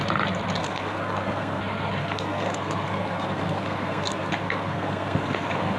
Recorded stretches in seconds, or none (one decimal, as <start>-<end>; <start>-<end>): 0.0-0.6; 1.6-2.0